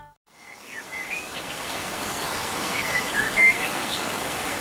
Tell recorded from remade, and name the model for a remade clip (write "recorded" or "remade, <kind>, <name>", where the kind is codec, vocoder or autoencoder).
remade, codec, SNAC